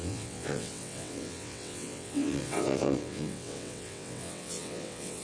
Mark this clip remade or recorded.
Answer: remade